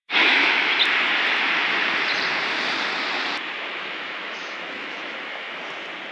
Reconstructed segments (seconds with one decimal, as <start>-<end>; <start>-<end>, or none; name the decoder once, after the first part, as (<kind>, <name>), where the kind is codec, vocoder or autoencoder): 0.0-0.7 (autoencoder, DAC-VAE); 3.7-5.6